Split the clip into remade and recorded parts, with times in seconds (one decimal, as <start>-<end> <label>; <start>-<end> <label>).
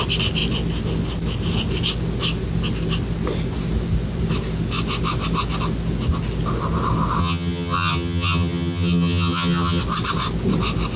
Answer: 0.0-7.2 recorded; 7.2-9.8 remade; 9.8-11.0 recorded